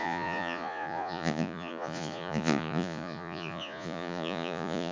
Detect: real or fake fake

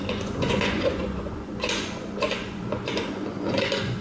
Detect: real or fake fake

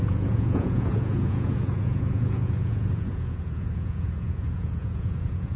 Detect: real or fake fake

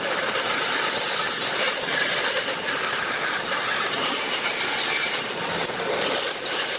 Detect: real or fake real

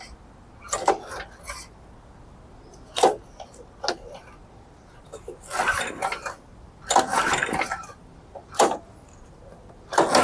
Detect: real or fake real